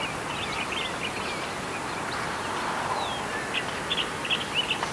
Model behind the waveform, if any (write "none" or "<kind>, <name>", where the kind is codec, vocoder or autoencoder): none